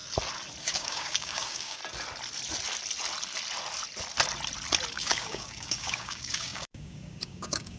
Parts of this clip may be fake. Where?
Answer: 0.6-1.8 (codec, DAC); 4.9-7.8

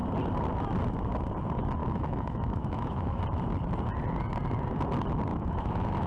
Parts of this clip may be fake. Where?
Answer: 1.8-3.2 (autoencoder, DAC-VAE); 5.3-6.1

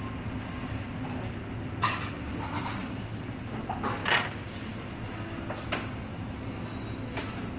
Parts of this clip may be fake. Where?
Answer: 2.8-3.4 (vocoder, BigVGAN v2)

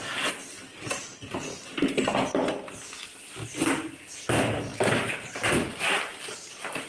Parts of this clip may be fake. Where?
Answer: 0.0-0.4 (vocoder, BigVGAN v2); 4.1-4.7; 6.2-6.9

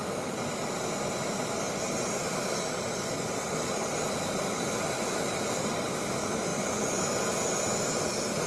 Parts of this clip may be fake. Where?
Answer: 6.5-7.0 (vocoder, Vocos)